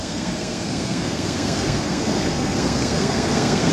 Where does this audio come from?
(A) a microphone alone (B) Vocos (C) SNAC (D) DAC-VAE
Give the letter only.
C